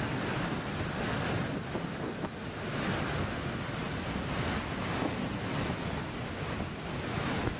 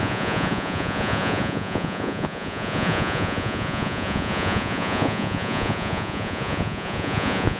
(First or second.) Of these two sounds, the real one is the first